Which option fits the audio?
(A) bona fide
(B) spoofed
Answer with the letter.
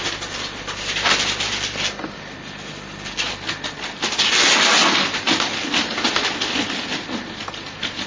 A